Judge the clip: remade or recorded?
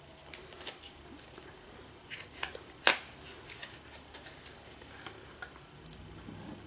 recorded